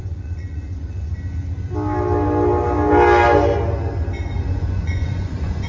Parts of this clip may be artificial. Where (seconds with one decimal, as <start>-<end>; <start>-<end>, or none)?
0.0-1.1; 4.5-5.7